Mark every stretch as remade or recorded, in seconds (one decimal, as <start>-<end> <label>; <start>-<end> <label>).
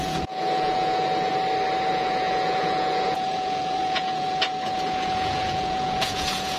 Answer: 0.0-1.3 remade; 1.3-1.9 recorded; 1.9-6.6 remade